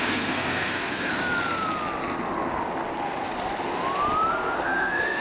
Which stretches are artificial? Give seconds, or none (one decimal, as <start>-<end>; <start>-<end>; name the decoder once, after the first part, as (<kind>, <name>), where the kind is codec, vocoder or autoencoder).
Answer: 0.0-1.2 (codec, SNAC); 4.3-5.2